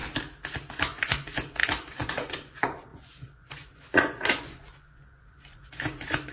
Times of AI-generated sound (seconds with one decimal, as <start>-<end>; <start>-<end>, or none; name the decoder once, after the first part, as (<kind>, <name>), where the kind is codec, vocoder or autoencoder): 0.7-6.3 (vocoder, Vocos)